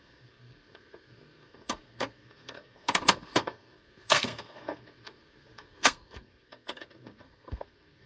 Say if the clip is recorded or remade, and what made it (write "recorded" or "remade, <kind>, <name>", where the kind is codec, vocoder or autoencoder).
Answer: remade, codec, SNAC